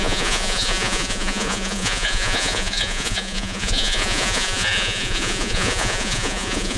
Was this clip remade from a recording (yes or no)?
yes